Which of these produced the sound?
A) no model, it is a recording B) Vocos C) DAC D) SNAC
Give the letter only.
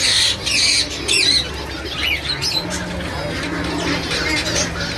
A